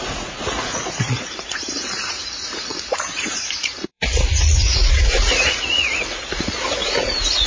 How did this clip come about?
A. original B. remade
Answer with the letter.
B